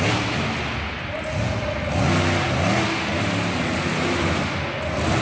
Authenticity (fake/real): real